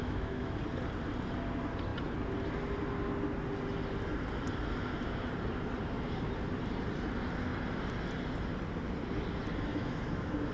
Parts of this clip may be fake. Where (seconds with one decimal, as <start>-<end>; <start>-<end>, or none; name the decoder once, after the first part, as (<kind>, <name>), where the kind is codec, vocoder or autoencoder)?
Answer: 0.0-0.6 (autoencoder, DAC-VAE); 9.7-10.5